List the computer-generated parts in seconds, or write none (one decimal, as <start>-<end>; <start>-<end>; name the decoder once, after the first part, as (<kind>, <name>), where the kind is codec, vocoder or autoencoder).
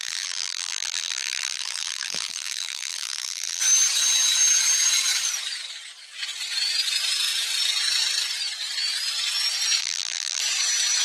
0.0-3.6 (vocoder, BigVGAN v2); 9.8-10.4